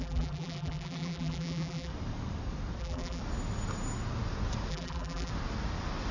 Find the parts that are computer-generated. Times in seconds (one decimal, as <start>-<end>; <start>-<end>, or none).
0.0-1.9; 2.8-3.2; 4.7-5.3